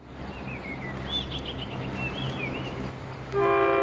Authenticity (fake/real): real